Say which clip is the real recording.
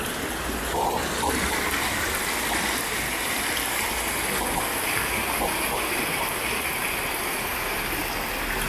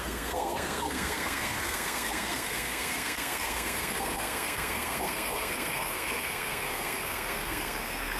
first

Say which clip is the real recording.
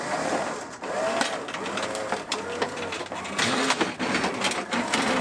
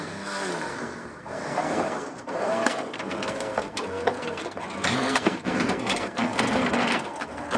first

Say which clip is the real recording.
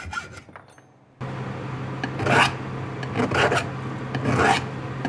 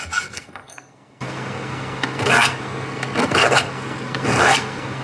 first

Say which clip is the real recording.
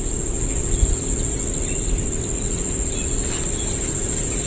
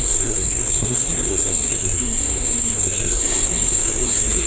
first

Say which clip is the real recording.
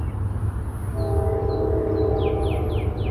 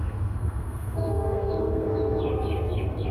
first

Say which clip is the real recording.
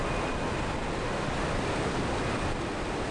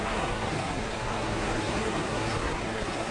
first